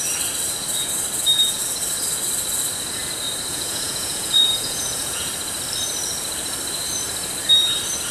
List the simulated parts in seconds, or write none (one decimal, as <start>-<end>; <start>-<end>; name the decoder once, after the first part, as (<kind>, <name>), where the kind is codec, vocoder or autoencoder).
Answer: 3.5-5.3 (vocoder, Vocos)